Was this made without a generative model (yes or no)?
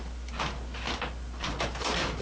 yes